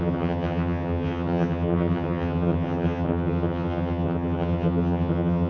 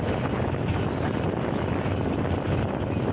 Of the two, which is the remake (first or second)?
first